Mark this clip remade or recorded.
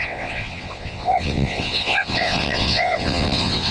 remade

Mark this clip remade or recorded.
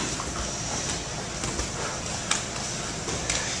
recorded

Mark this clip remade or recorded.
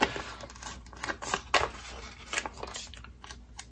recorded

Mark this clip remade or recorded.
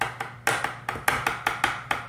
recorded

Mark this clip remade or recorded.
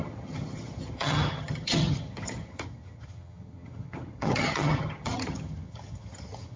remade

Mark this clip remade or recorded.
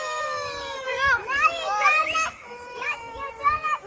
remade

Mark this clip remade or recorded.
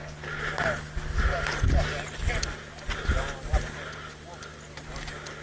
recorded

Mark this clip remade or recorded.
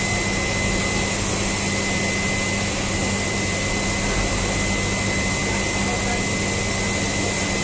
recorded